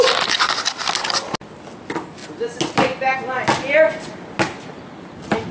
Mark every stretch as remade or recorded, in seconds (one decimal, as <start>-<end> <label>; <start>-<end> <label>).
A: 0.0-5.5 recorded